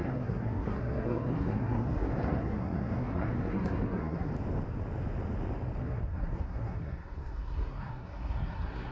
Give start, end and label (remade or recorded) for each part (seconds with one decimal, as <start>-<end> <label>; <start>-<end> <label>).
0.0-4.3 remade; 4.3-5.8 recorded; 5.8-8.9 remade